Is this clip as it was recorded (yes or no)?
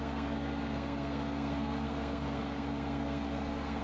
no